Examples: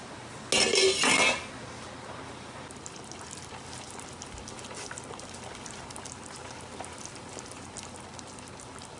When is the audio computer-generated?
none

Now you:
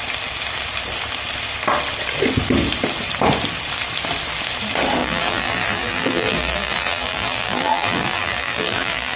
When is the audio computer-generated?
5.0-9.2 (vocoder, BigVGAN v2)

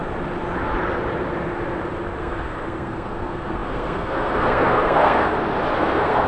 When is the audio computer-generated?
2.2-5.2 (codec, SNAC); 5.8-6.3

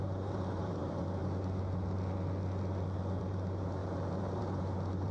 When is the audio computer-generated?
0.0-1.2 (vocoder, BigVGAN v2); 3.2-5.1

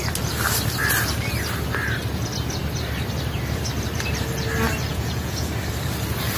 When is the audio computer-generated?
4.9-5.5 (vocoder, Vocos)

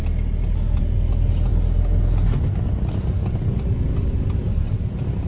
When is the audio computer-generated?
none

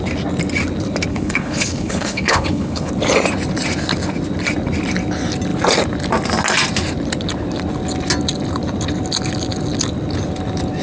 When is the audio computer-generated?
1.1-2.9 (codec, HILCodec)

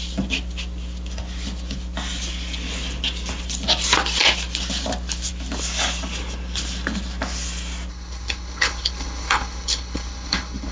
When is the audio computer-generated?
7.9-10.7 (codec, HILCodec)